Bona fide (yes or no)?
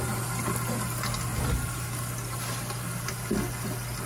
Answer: yes